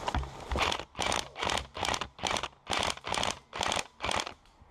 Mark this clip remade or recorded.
recorded